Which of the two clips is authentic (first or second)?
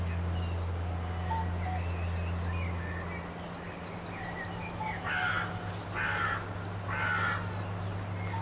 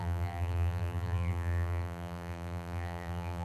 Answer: first